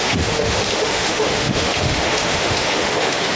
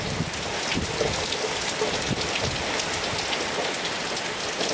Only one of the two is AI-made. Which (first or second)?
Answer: first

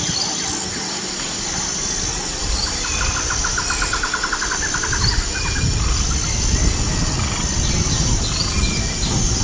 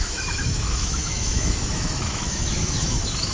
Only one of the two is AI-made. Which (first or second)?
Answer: second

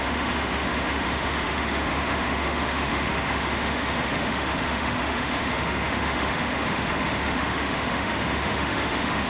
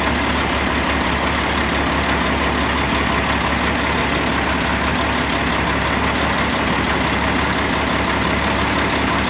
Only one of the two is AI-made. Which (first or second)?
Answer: first